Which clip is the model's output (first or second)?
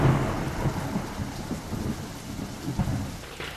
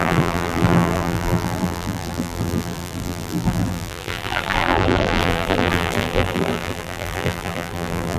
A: second